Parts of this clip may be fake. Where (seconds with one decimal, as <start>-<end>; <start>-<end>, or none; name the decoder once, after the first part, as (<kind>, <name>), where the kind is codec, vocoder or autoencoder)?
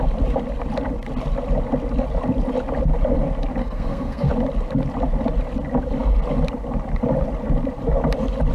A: 3.6-4.3 (codec, SNAC)